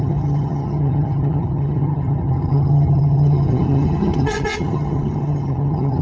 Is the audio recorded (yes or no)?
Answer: no